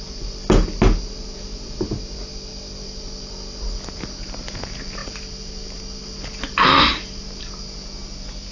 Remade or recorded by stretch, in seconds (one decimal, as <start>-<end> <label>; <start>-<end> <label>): 0.0-8.5 recorded